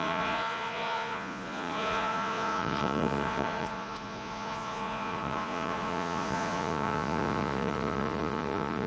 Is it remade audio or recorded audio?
remade